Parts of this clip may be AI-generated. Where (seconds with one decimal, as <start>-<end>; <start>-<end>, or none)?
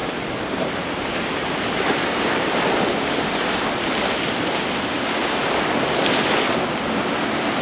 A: 0.0-2.5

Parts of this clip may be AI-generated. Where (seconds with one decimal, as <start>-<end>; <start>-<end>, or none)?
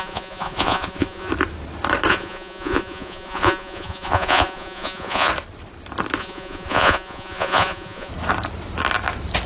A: 0.0-1.3; 2.1-5.3; 6.2-8.1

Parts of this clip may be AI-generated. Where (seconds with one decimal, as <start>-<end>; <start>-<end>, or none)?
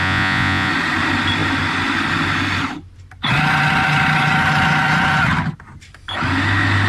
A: 0.0-0.7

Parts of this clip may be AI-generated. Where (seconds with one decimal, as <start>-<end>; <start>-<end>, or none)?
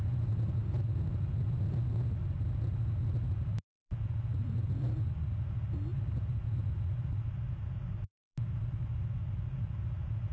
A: none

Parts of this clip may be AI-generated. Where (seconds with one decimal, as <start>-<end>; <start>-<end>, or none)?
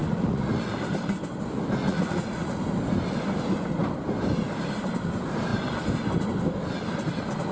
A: 0.0-0.7; 1.8-2.6